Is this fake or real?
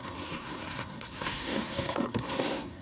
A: fake